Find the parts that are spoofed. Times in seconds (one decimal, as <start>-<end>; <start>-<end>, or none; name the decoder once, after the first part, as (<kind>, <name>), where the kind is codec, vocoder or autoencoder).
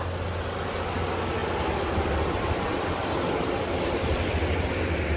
none